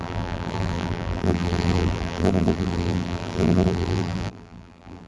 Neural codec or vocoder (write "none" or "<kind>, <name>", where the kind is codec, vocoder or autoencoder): vocoder, BigVGAN v2